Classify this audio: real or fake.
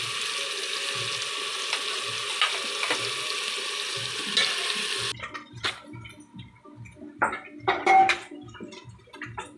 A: real